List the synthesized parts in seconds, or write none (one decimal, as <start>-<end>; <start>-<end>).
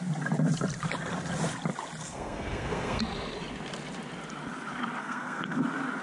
2.0-3.0; 5.0-5.6